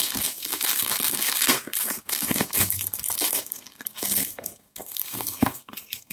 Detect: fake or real fake